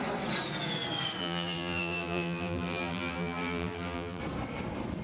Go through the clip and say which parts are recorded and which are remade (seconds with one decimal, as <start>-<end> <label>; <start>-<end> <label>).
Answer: 0.0-1.2 recorded; 1.2-4.2 remade; 4.2-5.0 recorded